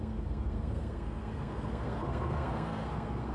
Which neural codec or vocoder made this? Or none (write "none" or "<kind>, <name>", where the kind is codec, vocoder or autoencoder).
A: codec, SNAC